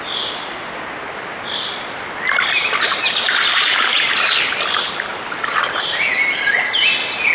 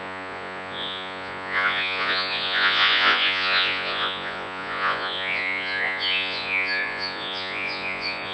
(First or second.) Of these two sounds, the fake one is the second